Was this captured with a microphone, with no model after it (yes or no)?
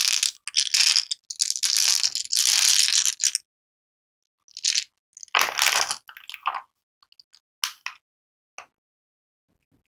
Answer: yes